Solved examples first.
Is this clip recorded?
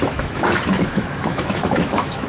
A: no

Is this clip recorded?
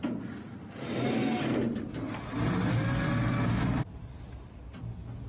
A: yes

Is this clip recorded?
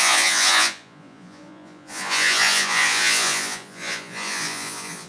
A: no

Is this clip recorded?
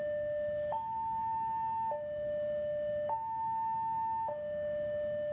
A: no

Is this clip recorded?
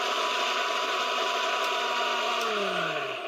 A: yes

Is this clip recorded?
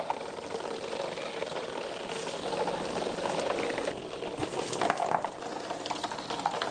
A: yes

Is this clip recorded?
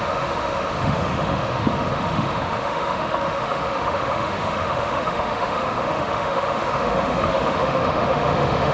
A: no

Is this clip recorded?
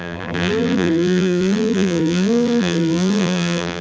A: no